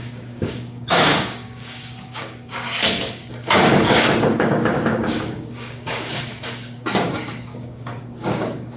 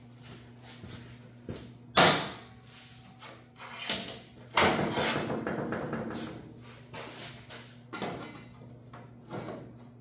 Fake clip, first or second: first